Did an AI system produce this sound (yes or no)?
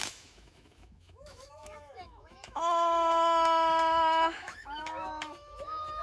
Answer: yes